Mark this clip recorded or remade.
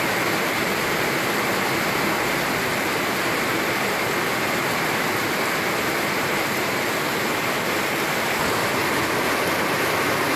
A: remade